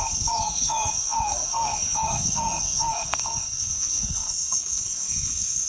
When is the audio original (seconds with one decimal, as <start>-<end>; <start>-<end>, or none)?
none